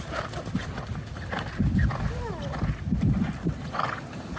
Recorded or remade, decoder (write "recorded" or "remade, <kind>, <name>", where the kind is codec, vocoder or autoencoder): recorded